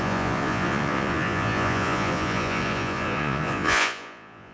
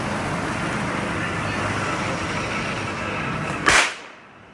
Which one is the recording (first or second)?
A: second